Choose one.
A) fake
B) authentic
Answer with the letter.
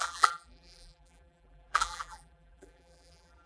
A